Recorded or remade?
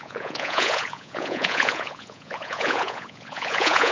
remade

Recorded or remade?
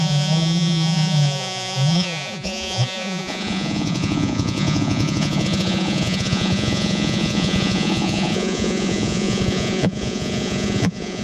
remade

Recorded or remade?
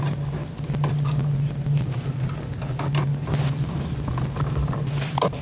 recorded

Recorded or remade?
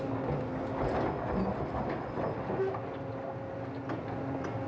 recorded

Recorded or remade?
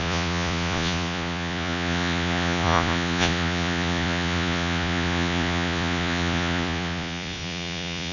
remade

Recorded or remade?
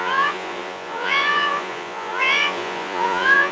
remade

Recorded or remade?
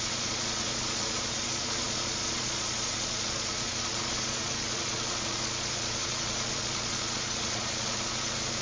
remade